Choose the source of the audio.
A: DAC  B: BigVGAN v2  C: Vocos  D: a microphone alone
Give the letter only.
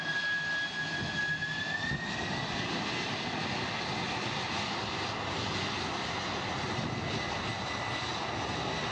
D